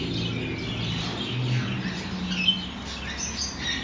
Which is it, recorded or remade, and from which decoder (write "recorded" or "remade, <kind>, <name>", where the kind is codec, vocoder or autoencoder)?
recorded